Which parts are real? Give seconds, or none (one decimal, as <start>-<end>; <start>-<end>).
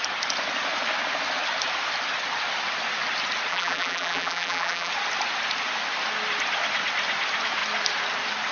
0.0-3.5; 4.9-8.5